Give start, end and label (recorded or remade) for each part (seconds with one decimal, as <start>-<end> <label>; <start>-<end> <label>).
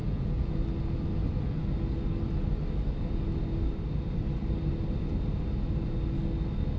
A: 0.0-0.5 remade; 0.5-6.8 recorded